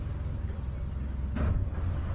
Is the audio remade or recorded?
recorded